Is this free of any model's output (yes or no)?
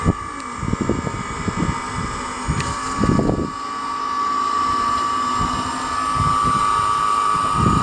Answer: yes